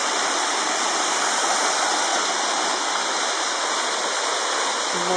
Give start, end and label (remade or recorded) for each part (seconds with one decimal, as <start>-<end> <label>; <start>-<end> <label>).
0.0-1.6 remade; 1.6-2.1 recorded; 2.1-2.6 remade; 2.6-5.2 recorded